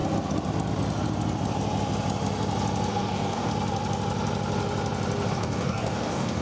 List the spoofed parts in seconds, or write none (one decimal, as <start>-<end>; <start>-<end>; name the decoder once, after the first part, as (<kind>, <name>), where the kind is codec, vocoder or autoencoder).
2.9-3.5 (codec, DAC); 5.3-6.4